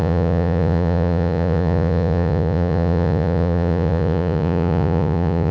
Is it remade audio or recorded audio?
remade